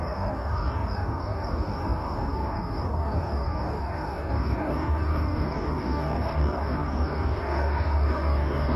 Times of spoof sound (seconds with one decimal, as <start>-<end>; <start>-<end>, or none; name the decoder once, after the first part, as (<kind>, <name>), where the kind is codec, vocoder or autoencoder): 0.0-8.8 (codec, DAC)